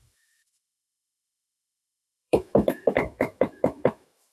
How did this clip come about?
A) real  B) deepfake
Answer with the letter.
B